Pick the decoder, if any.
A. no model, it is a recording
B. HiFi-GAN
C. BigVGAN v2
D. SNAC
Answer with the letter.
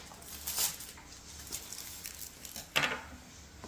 A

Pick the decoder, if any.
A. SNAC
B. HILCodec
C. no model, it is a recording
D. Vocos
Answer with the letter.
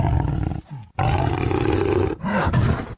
C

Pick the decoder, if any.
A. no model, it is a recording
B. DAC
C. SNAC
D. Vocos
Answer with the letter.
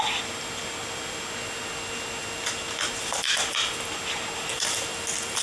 A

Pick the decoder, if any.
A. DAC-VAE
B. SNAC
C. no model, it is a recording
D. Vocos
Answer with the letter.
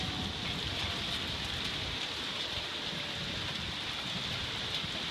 C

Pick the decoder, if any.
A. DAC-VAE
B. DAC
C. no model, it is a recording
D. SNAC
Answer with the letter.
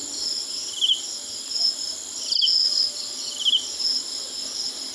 C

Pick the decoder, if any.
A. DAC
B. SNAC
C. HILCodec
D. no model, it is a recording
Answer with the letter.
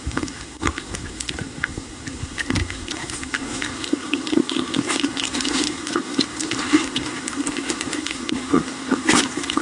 B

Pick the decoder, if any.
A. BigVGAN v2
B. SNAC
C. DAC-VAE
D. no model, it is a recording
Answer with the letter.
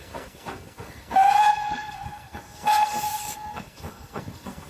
B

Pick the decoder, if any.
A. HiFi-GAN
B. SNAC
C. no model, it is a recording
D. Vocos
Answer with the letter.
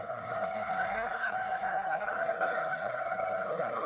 B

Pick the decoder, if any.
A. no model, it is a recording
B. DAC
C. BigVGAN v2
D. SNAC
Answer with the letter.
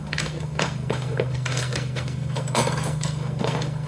D